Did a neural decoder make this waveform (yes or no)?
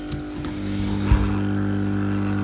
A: no